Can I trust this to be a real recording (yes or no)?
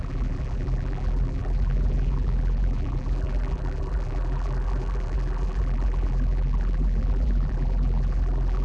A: no